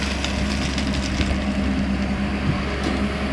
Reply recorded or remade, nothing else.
recorded